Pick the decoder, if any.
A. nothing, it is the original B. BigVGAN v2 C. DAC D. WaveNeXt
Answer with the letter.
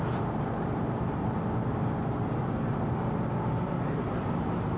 B